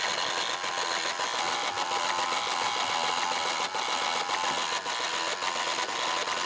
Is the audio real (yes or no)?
yes